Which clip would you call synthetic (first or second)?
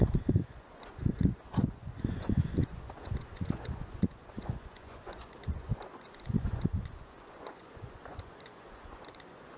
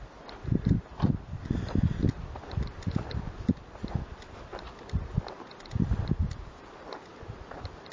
first